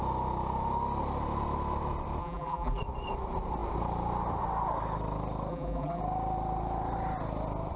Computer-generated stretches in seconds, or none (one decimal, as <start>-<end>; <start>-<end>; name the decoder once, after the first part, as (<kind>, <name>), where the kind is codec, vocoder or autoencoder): 2.2-2.8 (vocoder, BigVGAN v2); 5.5-6.0